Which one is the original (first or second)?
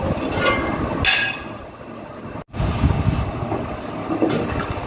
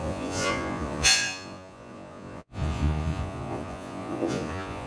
first